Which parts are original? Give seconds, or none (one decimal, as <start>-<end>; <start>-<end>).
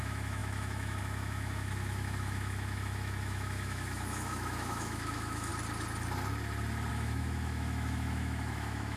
5.5-6.9